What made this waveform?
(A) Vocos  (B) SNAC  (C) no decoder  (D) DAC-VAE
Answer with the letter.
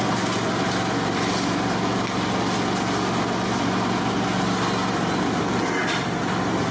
C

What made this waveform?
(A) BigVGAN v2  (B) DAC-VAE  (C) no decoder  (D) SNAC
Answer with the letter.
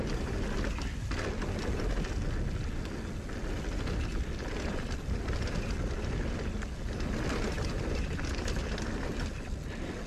C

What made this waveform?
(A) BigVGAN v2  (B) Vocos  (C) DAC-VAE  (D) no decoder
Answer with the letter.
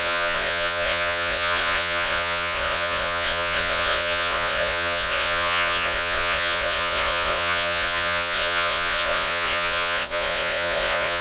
B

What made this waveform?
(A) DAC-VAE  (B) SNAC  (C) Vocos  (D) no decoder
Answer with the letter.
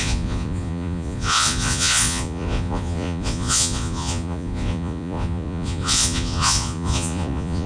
C